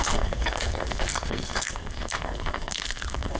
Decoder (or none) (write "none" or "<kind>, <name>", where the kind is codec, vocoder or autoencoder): codec, SNAC